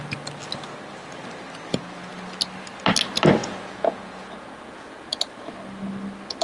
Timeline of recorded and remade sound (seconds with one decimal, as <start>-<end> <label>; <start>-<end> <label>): 0.0-3.4 recorded; 3.4-5.1 remade; 5.1-6.4 recorded